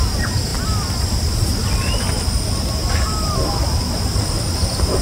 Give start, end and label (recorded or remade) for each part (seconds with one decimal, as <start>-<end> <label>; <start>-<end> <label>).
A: 0.0-5.0 recorded